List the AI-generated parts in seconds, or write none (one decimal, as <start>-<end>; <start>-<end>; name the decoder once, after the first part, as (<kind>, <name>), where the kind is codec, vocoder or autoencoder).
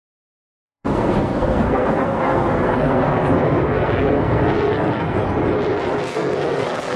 0.0-5.2 (codec, SNAC); 6.0-7.0